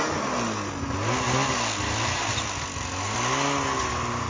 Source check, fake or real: real